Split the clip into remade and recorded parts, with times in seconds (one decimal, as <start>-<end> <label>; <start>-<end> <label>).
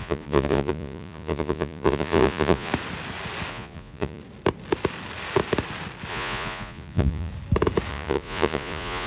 0.0-2.7 remade; 2.7-3.5 recorded; 3.5-4.2 remade; 4.2-6.1 recorded; 6.1-7.3 remade; 7.3-7.9 recorded; 7.9-9.1 remade